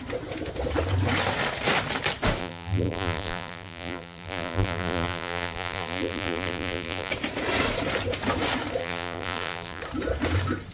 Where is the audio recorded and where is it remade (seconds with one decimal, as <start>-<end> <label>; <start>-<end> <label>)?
0.0-2.4 recorded; 2.4-7.1 remade; 7.1-8.8 recorded; 8.8-9.8 remade; 9.8-10.7 recorded